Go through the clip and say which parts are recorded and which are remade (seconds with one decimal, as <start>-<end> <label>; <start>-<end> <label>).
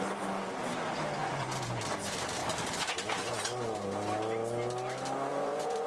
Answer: 0.0-1.2 recorded; 1.2-1.8 remade; 1.8-5.3 recorded; 5.3-5.9 remade